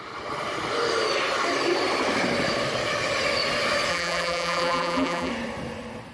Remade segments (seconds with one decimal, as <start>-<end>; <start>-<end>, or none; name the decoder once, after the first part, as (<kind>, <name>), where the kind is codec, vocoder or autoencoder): 3.9-5.3 (vocoder, BigVGAN v2)